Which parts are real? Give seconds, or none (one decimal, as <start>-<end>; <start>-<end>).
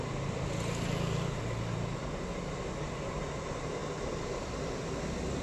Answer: 0.0-5.4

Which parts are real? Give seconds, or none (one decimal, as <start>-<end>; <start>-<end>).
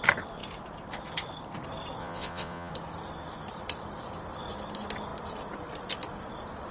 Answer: 0.0-2.0; 2.7-6.7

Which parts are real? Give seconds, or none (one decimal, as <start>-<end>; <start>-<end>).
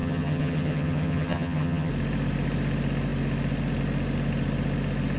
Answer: 1.9-5.2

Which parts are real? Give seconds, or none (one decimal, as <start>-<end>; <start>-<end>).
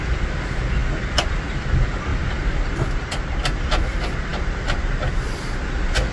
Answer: 0.0-6.1